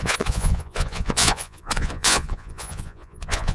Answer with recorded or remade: remade